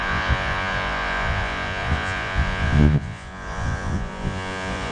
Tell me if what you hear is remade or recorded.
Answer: remade